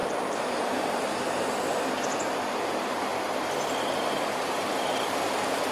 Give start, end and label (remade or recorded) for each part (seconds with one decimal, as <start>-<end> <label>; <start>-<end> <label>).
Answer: 0.0-3.1 remade; 3.1-4.1 recorded; 4.1-5.7 remade

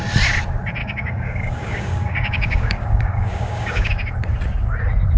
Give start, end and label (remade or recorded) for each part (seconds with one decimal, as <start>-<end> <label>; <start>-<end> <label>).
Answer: 0.0-0.8 recorded; 0.8-3.9 remade; 3.9-5.2 recorded

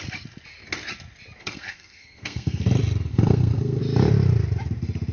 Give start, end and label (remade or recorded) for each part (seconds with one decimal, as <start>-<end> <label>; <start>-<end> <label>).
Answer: 0.0-1.4 recorded; 1.4-2.6 remade; 2.6-3.1 recorded; 3.1-3.8 remade; 3.8-5.1 recorded

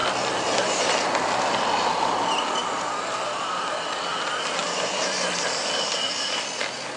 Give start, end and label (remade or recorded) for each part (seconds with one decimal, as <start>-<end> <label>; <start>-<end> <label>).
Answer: 0.0-7.0 recorded

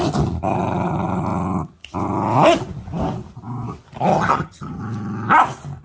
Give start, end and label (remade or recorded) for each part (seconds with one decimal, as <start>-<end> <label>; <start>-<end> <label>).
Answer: 0.0-4.1 recorded; 4.1-4.8 remade; 4.8-5.8 recorded

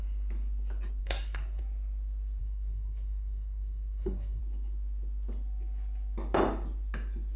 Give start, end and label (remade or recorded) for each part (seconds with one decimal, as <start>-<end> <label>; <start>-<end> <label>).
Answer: 0.0-1.0 recorded; 1.0-1.6 remade; 1.6-2.4 recorded; 2.4-4.4 remade; 4.4-7.4 recorded

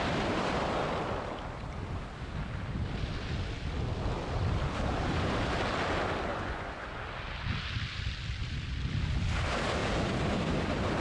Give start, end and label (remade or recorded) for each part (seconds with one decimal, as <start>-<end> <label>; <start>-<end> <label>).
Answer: 0.0-6.3 recorded; 6.3-7.0 remade; 7.0-11.0 recorded